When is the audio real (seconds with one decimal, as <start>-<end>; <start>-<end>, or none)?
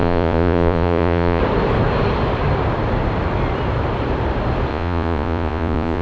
1.4-4.7